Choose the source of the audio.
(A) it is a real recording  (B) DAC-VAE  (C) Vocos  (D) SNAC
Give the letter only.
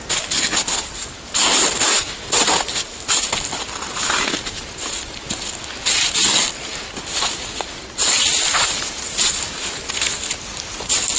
A